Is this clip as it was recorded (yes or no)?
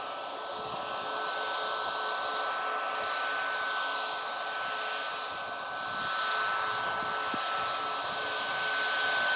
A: yes